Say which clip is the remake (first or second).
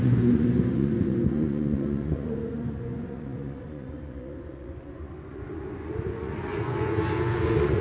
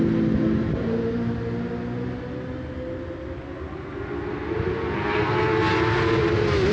first